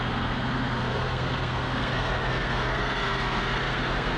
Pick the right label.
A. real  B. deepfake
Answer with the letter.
B